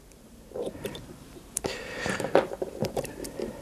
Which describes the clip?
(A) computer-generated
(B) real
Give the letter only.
A